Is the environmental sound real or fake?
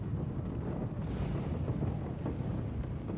real